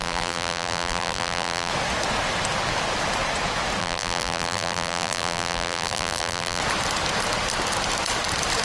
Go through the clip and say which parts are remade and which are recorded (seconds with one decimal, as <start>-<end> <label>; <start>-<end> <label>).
0.0-1.7 remade; 1.7-3.8 recorded; 3.8-6.6 remade; 6.6-8.6 recorded